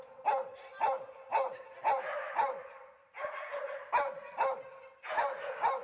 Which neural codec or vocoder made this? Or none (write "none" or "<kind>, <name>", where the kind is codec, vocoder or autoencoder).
none